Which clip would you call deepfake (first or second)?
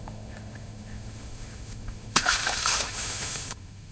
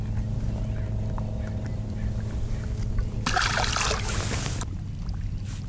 first